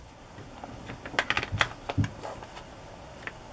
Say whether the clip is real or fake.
real